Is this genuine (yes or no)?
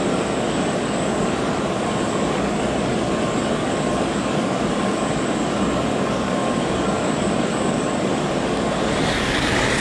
no